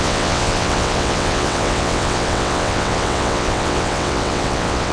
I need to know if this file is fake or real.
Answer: fake